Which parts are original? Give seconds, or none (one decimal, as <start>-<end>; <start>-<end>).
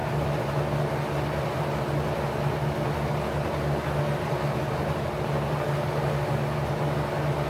0.0-7.5